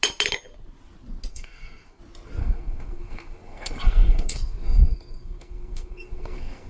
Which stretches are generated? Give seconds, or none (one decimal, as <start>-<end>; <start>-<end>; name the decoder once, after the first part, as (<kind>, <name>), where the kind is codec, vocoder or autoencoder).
1.3-2.0 (codec, SNAC); 2.4-6.7